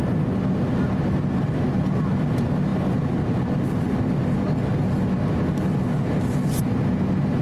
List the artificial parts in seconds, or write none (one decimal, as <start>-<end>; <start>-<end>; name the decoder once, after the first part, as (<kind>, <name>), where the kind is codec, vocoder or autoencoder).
none